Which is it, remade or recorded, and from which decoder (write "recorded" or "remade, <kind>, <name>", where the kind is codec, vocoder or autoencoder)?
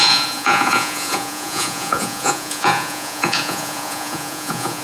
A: remade, vocoder, Vocos